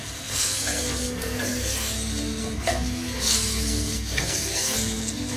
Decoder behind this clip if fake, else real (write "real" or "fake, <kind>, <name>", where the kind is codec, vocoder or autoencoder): fake, codec, SNAC